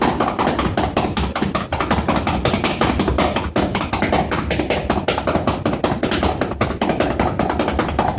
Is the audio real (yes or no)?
yes